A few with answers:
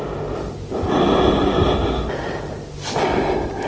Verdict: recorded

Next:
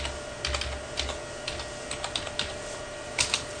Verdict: recorded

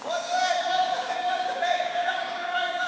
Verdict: remade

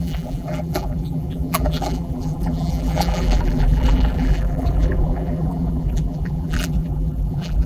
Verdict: remade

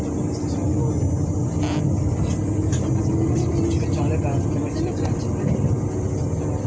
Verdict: recorded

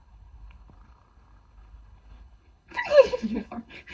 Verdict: remade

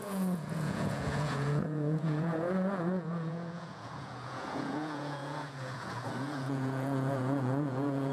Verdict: remade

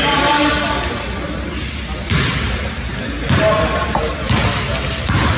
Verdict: recorded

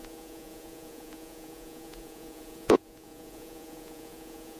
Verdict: remade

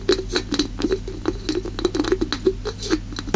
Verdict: recorded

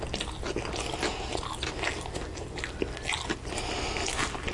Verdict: recorded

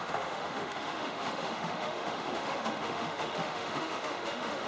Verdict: remade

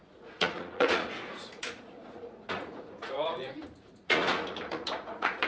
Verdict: remade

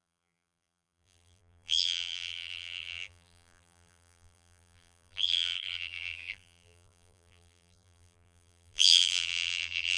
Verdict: remade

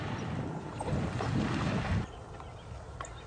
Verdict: recorded